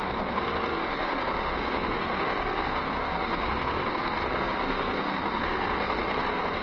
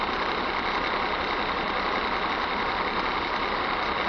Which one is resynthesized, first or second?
first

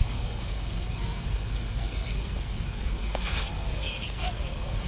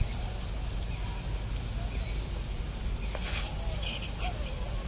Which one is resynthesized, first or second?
first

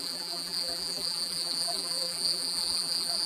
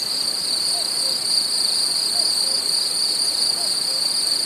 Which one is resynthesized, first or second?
first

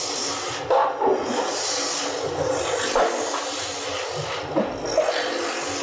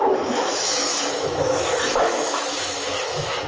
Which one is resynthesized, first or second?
second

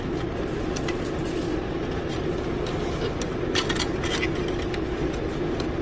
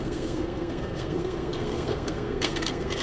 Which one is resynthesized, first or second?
second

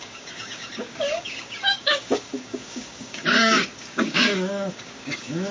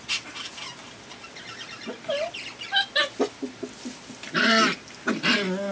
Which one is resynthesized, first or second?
first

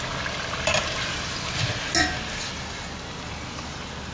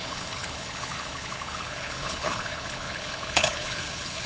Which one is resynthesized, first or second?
second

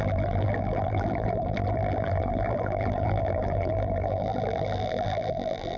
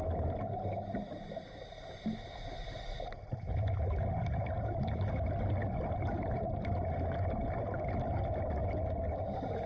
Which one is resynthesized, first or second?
first